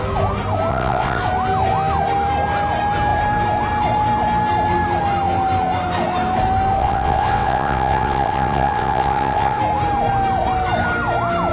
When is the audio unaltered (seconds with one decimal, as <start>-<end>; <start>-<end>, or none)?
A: 0.0-0.7; 1.2-6.8; 9.6-11.5